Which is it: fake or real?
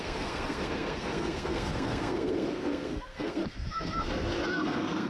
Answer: fake